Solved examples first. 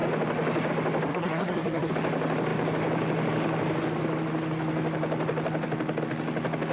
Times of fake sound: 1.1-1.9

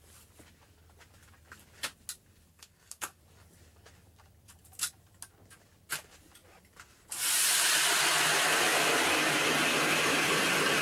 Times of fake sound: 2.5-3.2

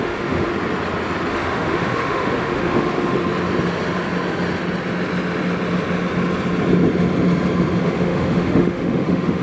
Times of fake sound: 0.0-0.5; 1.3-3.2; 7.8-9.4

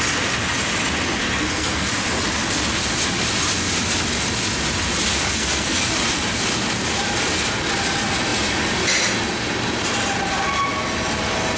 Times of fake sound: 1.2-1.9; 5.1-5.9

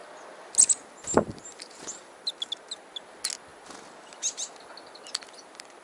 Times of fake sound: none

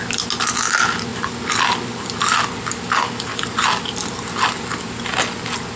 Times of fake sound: none